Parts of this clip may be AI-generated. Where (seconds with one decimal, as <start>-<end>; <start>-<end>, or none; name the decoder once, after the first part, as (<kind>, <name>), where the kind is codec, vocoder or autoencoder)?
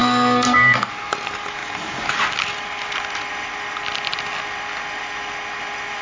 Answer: 0.0-0.9 (codec, SNAC)